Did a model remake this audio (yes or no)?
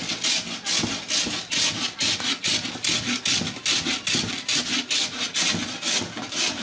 no